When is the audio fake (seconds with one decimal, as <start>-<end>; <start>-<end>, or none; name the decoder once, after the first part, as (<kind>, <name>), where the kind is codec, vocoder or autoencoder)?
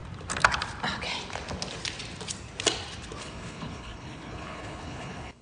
3.2-5.4 (codec, HILCodec)